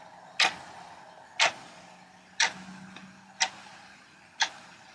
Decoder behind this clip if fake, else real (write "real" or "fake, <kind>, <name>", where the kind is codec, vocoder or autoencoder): real